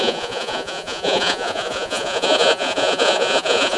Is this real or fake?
fake